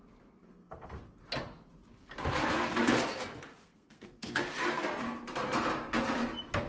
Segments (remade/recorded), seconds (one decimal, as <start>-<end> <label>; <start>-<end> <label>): 0.0-0.4 recorded; 0.4-1.0 remade; 1.0-3.5 recorded; 3.5-4.4 remade; 4.4-6.7 recorded

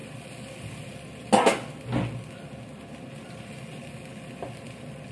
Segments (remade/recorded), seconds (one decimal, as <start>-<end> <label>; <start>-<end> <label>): 0.0-5.1 recorded

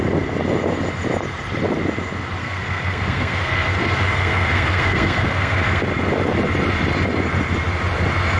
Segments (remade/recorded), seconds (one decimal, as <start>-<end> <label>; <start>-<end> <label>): 0.0-2.4 recorded; 2.4-5.8 remade; 5.8-8.4 recorded

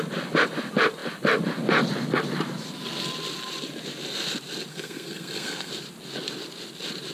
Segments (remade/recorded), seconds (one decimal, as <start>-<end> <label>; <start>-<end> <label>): 0.0-4.7 recorded; 4.7-5.7 remade; 5.7-7.1 recorded

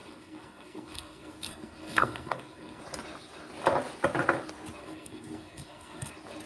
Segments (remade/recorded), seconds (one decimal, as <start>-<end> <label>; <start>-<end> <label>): 0.0-2.8 remade; 2.8-4.8 recorded; 4.8-6.1 remade; 6.1-6.5 recorded

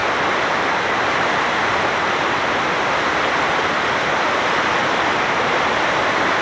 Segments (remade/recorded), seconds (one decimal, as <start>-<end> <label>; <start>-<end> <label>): 0.0-6.4 recorded